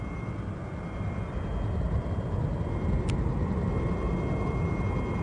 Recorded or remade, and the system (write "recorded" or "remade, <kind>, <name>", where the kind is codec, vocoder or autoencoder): recorded